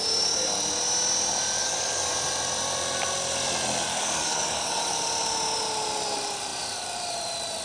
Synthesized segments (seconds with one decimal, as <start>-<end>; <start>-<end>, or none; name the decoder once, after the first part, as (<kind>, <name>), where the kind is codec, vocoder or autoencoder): 1.6-2.1 (codec, DAC); 3.9-5.0